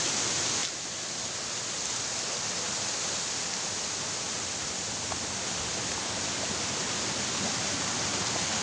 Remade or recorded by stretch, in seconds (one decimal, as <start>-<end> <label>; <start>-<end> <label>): 0.0-8.6 recorded